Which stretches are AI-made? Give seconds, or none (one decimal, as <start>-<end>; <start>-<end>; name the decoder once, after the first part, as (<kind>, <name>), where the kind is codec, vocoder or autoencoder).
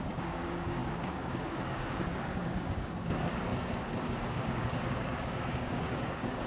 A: 0.0-6.5 (codec, DAC)